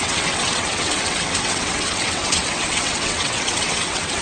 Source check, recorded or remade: remade